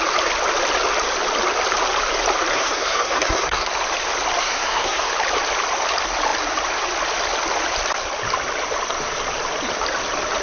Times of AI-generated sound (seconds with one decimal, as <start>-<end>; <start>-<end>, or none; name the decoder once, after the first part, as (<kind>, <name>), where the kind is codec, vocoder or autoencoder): 2.5-3.7 (codec, SNAC); 4.4-5.1